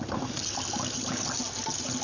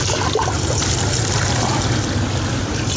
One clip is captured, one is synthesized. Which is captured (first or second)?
first